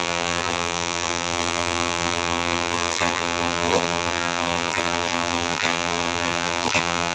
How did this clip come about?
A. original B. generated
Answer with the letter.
B